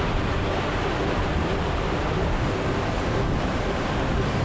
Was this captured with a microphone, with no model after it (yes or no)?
no